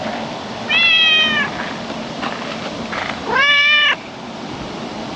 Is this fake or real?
fake